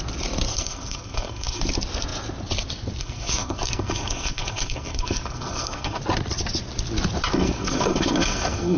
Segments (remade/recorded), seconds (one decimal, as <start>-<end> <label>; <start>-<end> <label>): 0.0-0.5 recorded; 0.5-1.6 remade; 1.6-3.0 recorded; 3.0-6.0 remade; 6.0-7.3 recorded; 7.3-8.8 remade